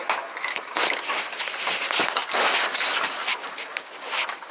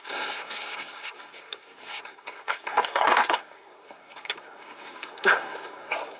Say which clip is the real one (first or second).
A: first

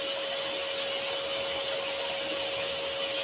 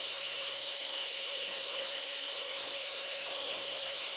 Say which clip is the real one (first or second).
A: first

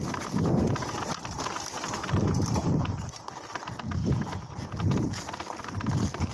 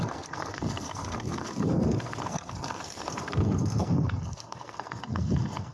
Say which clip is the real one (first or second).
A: first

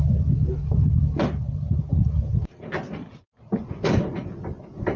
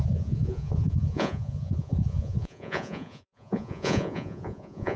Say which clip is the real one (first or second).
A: first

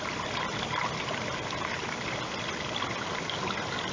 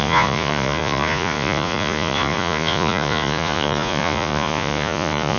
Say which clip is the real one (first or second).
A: first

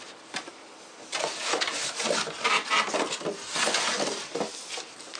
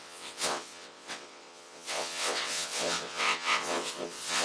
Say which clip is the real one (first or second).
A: first